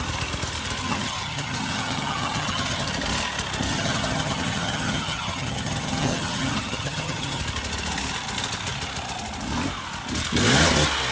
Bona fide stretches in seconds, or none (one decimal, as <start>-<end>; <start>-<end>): 0.0-0.8; 2.9-3.7; 7.4-11.1

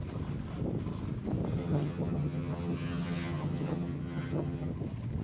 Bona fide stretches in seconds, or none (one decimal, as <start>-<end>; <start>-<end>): 0.0-1.6; 4.7-5.2

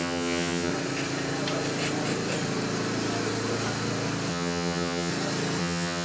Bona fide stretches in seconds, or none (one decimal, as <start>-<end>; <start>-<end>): 0.7-4.3; 5.1-5.6